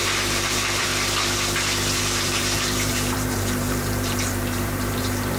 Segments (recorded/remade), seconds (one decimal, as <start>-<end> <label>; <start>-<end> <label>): 0.0-0.9 remade; 0.9-2.0 recorded; 2.0-5.4 remade